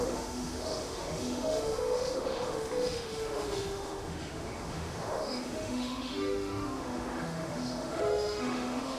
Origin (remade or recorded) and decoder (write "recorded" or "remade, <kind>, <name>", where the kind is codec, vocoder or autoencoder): remade, autoencoder, DAC-VAE